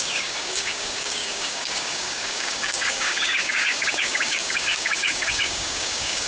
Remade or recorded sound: remade